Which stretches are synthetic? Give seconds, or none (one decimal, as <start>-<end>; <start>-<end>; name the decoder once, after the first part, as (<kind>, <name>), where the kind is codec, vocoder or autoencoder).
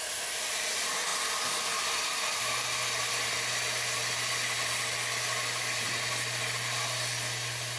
none